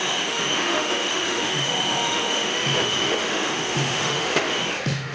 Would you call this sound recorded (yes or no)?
no